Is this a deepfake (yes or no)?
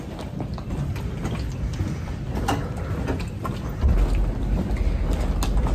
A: no